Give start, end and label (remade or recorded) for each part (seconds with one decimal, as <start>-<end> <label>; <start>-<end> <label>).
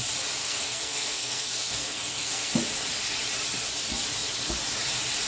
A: 0.0-0.4 recorded; 0.4-2.5 remade; 2.5-5.3 recorded